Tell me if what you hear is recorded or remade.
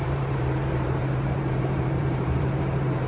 remade